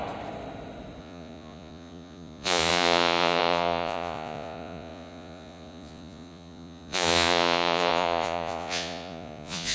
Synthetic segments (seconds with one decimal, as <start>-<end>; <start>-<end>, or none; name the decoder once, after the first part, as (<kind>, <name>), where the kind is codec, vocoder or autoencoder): 1.0-9.7 (vocoder, Vocos)